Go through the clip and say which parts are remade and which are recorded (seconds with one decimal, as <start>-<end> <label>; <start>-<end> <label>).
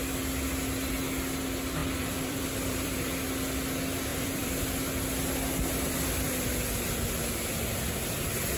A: 0.0-1.8 recorded; 1.8-3.1 remade; 3.1-4.1 recorded; 4.1-4.6 remade; 4.6-8.6 recorded